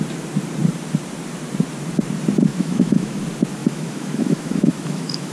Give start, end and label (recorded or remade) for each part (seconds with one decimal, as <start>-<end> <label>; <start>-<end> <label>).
0.0-2.5 recorded; 2.5-3.2 remade; 3.2-3.6 recorded; 3.6-5.3 remade